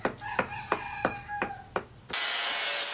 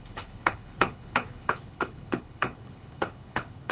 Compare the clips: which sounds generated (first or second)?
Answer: second